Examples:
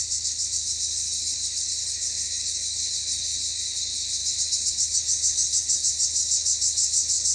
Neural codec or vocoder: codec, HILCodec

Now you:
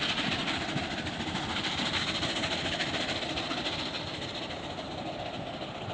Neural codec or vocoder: none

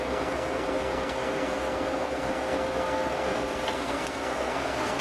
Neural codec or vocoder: codec, SNAC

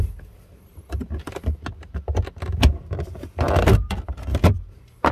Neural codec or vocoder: none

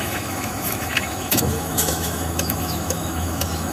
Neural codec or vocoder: autoencoder, DAC-VAE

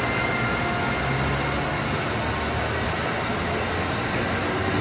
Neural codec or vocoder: none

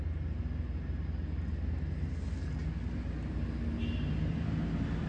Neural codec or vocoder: none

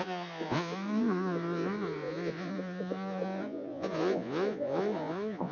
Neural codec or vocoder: vocoder, Vocos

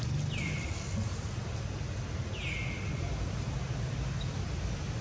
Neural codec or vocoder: none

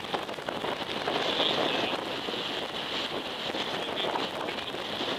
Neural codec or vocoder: none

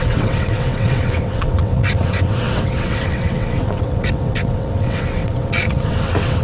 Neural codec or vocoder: vocoder, WaveNeXt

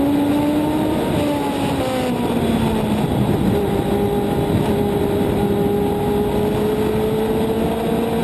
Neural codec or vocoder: none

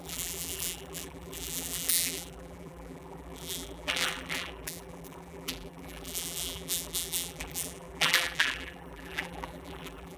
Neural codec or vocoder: vocoder, BigVGAN v2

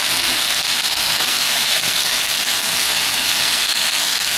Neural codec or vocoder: codec, SNAC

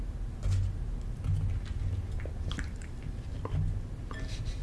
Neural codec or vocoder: none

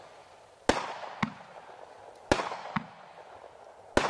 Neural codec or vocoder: none